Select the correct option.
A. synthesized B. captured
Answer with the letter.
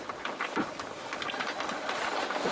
B